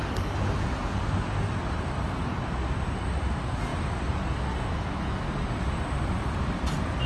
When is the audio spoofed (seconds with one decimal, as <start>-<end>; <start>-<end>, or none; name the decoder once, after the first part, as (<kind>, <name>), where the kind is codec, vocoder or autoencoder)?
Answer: none